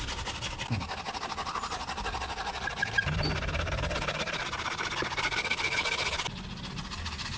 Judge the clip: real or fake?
real